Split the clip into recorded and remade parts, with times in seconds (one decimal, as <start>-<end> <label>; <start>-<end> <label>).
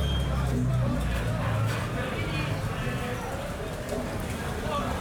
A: 0.0-5.0 recorded